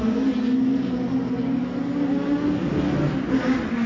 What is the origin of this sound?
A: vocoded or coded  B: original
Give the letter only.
B